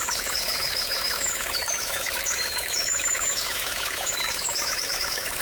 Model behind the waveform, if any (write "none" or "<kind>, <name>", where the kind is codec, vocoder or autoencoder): autoencoder, DAC-VAE